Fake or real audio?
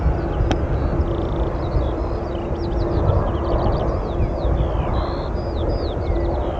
real